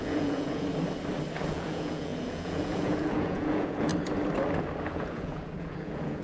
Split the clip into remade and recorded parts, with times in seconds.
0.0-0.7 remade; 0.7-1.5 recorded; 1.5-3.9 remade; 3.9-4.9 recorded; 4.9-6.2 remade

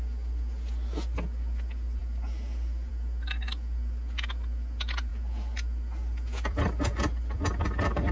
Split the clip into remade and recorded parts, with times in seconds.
0.0-8.1 recorded

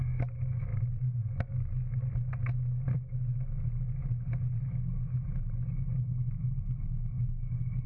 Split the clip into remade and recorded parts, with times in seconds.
0.0-7.9 recorded

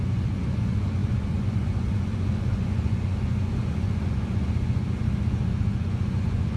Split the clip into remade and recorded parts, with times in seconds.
0.0-6.6 remade

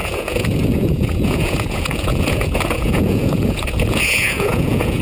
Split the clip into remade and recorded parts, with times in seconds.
0.0-5.0 remade

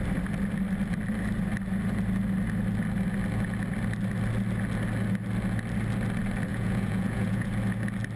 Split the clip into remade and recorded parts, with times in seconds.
0.0-6.5 recorded; 6.5-7.5 remade; 7.5-8.2 recorded